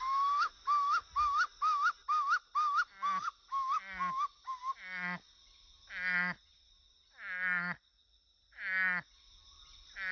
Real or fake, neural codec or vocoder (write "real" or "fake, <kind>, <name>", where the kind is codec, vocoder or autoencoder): real